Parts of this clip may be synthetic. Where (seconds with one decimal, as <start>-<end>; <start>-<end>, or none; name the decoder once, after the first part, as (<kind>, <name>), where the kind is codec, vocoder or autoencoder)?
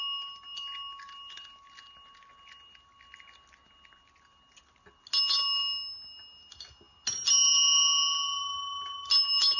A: none